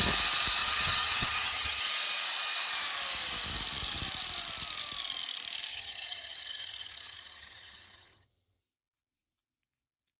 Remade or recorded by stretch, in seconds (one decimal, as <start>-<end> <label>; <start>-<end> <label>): 0.0-0.6 recorded; 0.6-1.8 remade; 1.8-5.7 recorded; 5.7-8.6 remade; 8.6-10.2 recorded